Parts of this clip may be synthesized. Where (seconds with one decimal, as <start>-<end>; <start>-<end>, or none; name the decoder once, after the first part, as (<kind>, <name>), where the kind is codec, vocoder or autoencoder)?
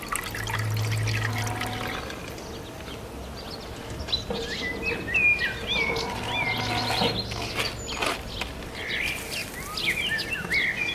none